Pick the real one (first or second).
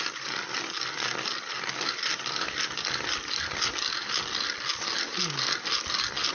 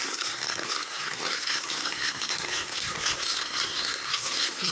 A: first